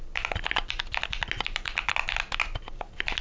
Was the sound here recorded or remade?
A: recorded